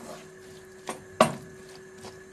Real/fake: real